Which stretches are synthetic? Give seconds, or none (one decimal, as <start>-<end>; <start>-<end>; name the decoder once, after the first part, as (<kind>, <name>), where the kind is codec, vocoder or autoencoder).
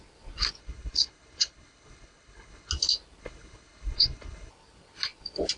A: 0.6-2.7 (codec, HILCodec); 3.2-4.5